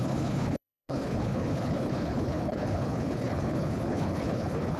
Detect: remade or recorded remade